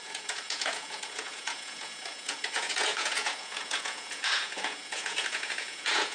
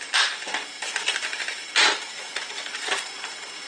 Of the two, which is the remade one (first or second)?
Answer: first